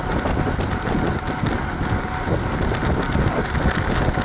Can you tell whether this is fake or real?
real